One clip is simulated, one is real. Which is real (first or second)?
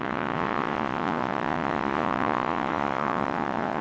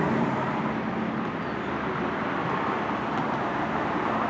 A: second